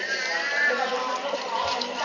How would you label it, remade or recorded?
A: recorded